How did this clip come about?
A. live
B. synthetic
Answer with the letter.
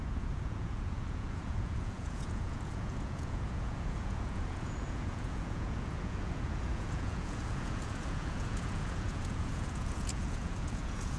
B